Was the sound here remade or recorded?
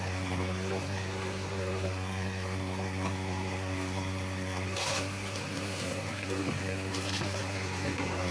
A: remade